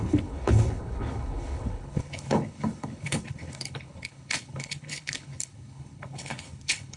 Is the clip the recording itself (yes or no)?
no